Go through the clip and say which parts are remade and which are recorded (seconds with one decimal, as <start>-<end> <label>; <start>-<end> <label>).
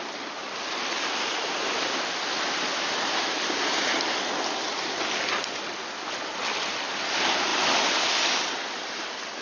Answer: 0.0-9.4 recorded